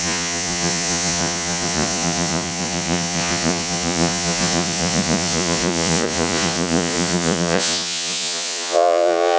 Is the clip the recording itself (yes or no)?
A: no